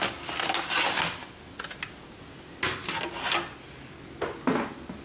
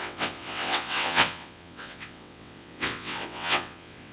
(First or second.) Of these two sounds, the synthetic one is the second